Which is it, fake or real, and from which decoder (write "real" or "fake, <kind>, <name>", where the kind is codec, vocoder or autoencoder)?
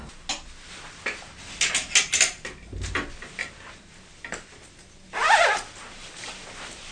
real